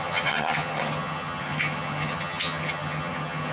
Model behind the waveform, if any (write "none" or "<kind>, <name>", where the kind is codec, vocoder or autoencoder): vocoder, HiFi-GAN